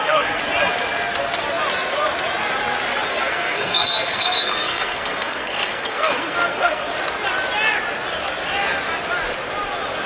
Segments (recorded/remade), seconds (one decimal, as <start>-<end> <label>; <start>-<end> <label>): 0.0-0.4 remade; 0.4-3.1 recorded; 3.1-6.9 remade; 6.9-10.1 recorded